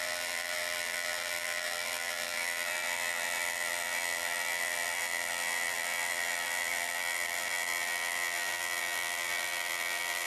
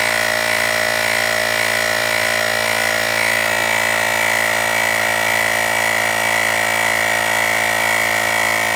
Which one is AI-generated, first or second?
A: first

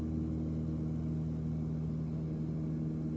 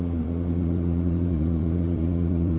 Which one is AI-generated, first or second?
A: second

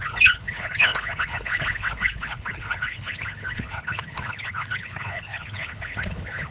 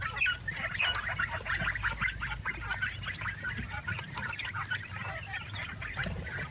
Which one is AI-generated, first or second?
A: first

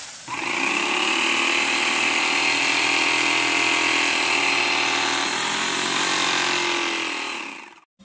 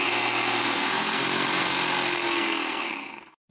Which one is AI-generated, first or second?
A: second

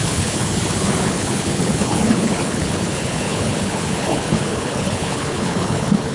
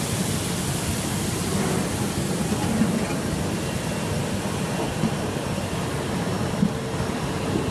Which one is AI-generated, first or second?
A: first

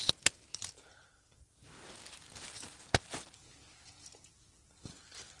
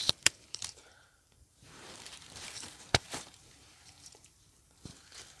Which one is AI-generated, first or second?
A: second